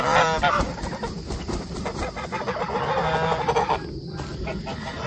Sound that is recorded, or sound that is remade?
recorded